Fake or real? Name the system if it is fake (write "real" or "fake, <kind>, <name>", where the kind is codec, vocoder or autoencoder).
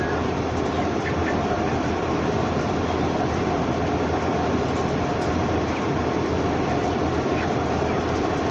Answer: real